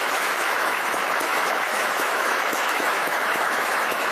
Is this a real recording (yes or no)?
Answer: no